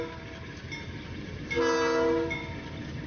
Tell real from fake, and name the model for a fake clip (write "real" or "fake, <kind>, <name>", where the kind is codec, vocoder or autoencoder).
real